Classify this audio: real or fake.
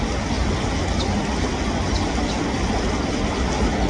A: real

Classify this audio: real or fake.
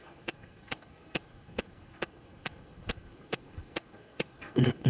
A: fake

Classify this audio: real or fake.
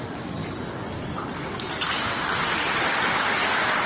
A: real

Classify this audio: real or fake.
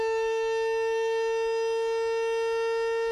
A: real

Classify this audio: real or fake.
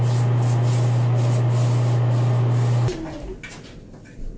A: real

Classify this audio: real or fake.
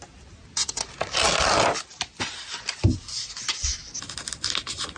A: real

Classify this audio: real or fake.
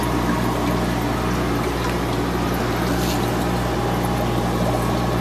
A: real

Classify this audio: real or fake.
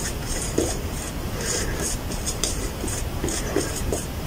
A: fake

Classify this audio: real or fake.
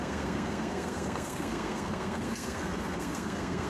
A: fake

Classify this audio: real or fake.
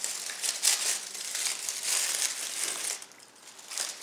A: real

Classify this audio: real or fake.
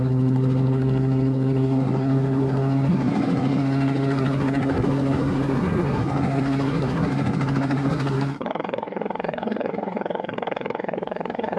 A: fake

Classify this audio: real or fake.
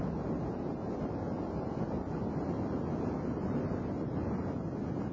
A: real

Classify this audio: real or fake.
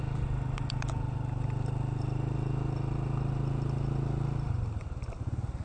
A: real